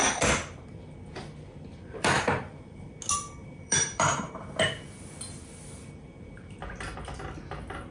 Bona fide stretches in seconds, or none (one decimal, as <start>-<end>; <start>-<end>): 0.8-1.7; 2.9-3.4; 4.4-7.9